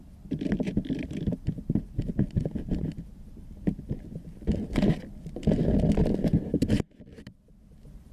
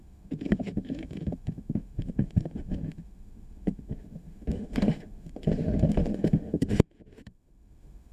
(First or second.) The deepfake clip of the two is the second